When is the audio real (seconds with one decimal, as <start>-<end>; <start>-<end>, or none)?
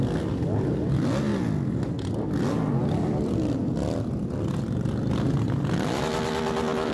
0.0-6.9